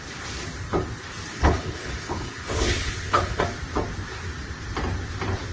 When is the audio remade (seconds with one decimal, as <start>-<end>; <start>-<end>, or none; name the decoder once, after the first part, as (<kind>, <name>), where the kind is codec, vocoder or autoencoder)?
1.3-3.4 (codec, HILCodec)